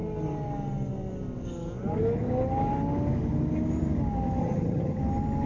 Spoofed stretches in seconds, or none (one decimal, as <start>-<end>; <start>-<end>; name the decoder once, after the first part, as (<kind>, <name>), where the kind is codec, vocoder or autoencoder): 4.4-5.0 (vocoder, HiFi-GAN)